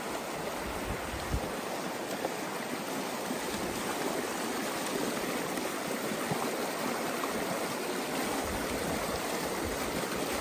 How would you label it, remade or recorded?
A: recorded